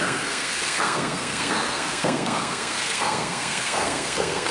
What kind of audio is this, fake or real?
fake